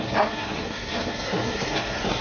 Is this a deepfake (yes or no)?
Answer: yes